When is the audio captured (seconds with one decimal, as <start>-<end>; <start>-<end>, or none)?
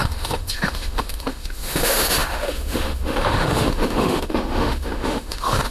none